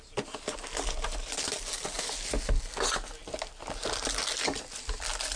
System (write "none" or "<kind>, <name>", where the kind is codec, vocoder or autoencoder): none